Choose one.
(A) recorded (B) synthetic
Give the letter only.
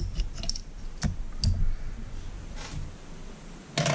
A